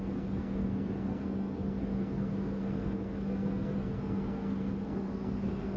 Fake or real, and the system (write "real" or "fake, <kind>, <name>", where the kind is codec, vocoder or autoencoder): fake, codec, SNAC